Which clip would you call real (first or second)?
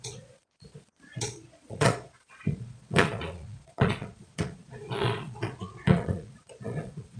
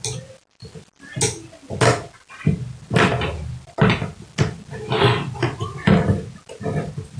second